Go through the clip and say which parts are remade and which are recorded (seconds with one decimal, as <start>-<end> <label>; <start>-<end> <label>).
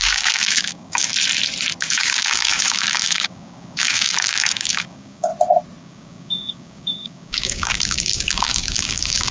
0.0-1.1 remade; 1.1-1.8 recorded; 1.8-5.3 remade; 5.3-5.8 recorded; 5.8-9.3 remade